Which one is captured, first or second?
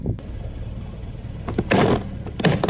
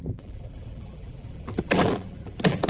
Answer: first